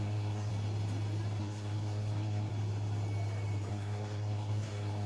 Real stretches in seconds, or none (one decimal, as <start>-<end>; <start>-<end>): 0.5-1.4; 2.5-3.7